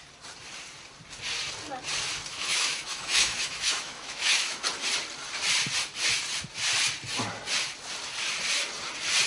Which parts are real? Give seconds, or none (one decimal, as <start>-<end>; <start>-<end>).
0.0-2.3; 4.6-9.3